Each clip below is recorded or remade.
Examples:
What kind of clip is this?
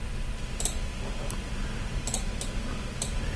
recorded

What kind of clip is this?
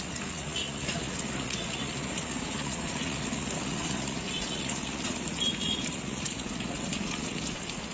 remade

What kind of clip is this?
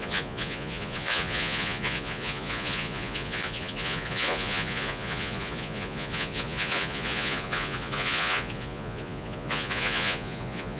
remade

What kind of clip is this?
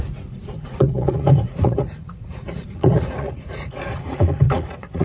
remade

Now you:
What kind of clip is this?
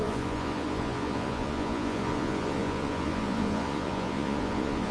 remade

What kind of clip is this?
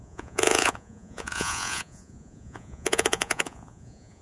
remade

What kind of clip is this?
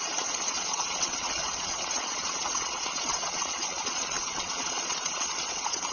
remade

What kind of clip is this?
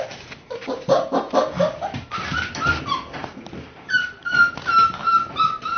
recorded